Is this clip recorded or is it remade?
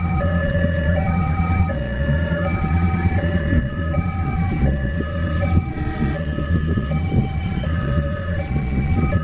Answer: remade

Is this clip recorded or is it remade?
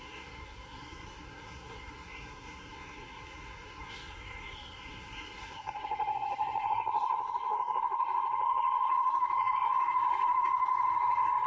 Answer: remade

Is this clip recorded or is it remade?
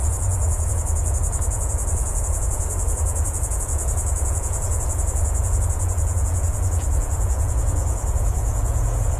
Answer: remade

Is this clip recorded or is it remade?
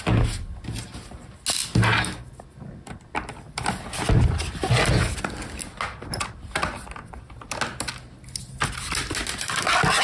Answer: recorded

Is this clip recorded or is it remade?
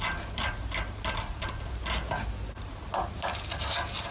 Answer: recorded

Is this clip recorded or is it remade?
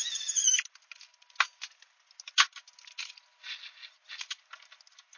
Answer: recorded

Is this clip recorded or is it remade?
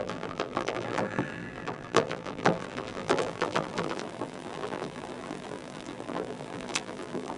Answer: remade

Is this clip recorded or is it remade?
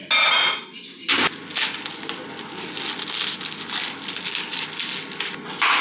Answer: recorded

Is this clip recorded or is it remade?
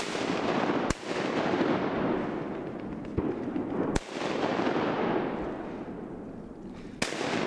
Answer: recorded